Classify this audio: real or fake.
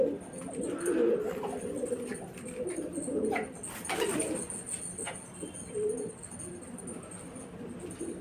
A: real